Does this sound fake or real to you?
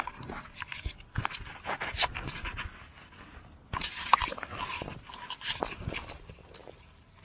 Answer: real